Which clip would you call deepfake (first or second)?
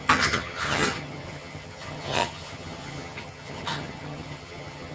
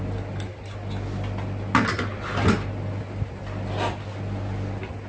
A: first